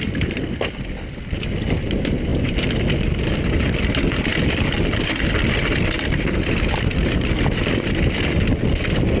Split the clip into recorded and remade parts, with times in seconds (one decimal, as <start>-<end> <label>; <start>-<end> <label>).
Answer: 0.0-9.2 recorded